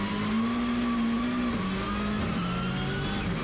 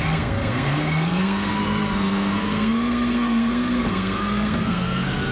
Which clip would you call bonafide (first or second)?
first